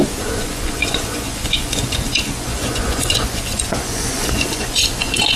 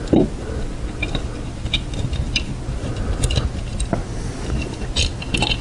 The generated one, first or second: first